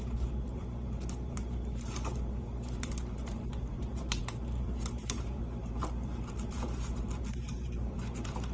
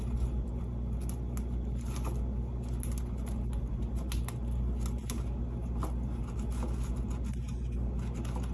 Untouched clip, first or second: second